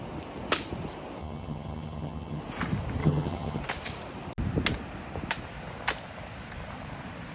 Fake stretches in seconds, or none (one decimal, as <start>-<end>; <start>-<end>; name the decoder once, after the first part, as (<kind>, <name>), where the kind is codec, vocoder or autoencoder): 1.2-2.4 (vocoder, HiFi-GAN); 3.0-3.6